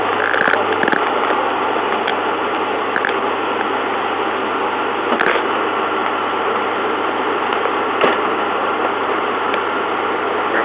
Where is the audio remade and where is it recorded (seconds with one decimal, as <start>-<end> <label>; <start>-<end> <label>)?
0.0-10.6 recorded